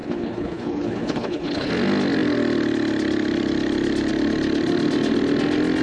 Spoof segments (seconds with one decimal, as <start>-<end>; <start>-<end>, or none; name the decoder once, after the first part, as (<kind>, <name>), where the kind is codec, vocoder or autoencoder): 0.0-1.7 (codec, HILCodec)